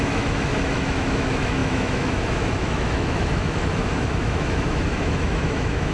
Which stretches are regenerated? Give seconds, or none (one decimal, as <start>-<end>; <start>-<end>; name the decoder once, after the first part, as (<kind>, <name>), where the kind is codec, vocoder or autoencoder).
0.0-5.9 (autoencoder, DAC-VAE)